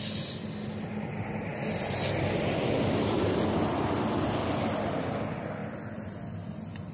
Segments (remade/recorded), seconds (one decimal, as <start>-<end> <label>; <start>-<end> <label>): 0.0-6.9 recorded